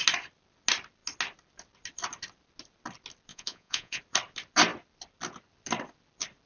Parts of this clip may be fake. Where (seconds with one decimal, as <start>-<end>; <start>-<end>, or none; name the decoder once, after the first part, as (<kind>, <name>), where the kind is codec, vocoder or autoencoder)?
3.3-4.0 (vocoder, Vocos)